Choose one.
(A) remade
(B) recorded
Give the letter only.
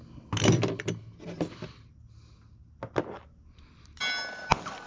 B